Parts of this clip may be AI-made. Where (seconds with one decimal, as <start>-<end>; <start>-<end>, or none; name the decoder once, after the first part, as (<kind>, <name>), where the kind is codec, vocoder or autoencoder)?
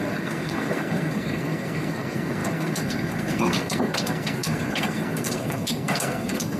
0.0-6.6 (codec, SNAC)